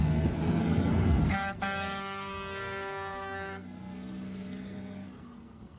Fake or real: fake